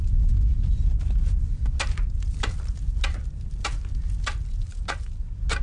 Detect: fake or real real